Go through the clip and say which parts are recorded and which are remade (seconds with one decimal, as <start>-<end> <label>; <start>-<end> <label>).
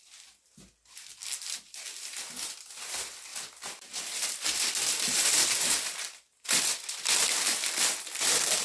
0.0-8.6 recorded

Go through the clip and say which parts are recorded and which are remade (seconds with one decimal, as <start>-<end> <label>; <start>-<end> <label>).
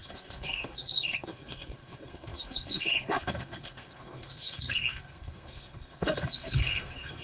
0.0-7.2 remade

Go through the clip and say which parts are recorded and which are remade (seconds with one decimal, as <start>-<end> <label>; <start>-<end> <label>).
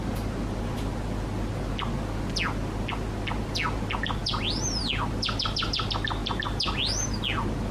0.0-7.7 recorded